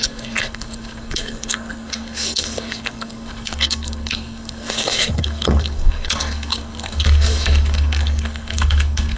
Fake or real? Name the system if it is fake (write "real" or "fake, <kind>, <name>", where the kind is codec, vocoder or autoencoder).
fake, codec, SNAC